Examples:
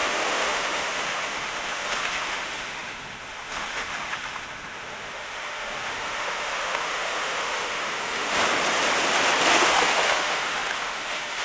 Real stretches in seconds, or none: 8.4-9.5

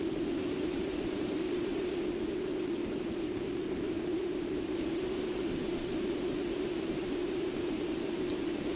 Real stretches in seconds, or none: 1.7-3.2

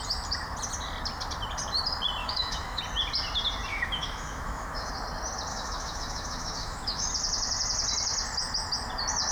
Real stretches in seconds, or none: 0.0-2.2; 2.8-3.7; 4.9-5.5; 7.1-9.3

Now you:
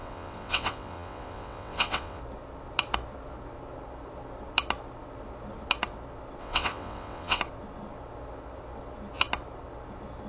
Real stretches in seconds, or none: 2.2-6.4; 7.4-10.3

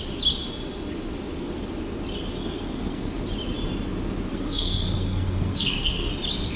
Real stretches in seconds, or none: 0.0-2.4; 3.2-4.3; 6.1-6.6

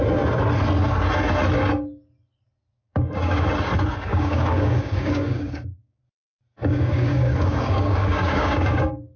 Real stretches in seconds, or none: 0.0-2.8; 3.5-4.1; 6.0-6.7

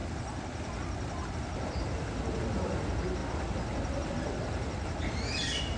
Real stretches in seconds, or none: 0.0-5.8

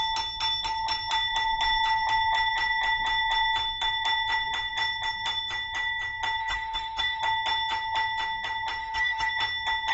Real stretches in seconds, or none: 0.0-6.4; 7.2-8.8; 9.3-9.9